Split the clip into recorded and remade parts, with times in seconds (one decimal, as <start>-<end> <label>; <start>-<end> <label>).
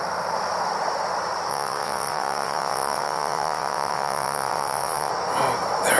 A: 0.0-1.5 recorded; 1.5-5.1 remade; 5.1-6.0 recorded